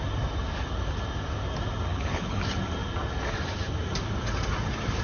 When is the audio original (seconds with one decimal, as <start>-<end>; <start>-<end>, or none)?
0.0-1.9; 2.4-5.0